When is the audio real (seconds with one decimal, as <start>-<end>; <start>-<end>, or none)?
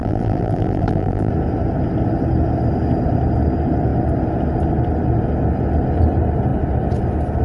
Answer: 1.3-7.4